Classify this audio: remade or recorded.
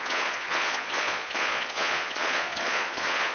remade